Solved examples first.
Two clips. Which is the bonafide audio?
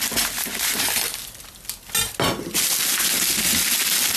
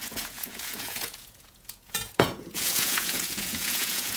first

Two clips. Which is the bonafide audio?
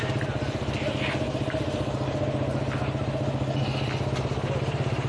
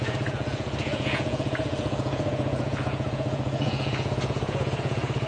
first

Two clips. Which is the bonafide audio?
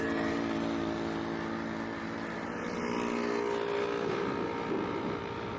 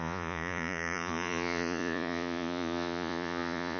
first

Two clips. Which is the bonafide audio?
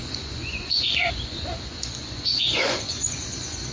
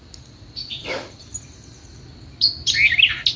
second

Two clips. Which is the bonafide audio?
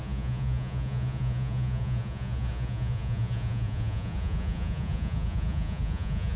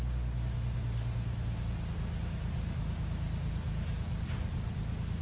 second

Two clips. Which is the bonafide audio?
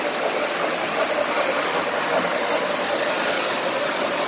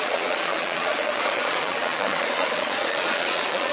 first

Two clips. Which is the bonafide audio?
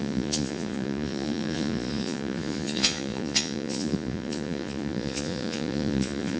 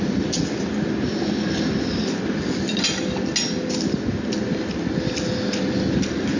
second